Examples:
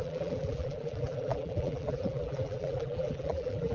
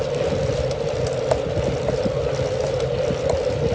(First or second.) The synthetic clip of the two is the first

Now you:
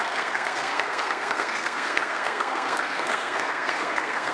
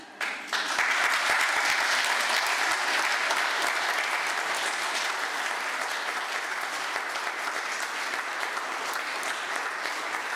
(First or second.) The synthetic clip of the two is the first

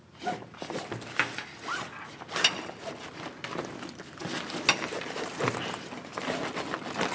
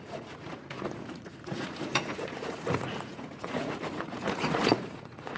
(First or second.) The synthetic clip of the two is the second